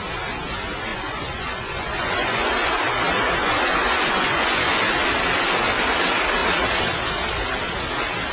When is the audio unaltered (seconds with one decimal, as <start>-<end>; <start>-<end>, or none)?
0.0-0.9; 2.5-3.1; 4.8-8.3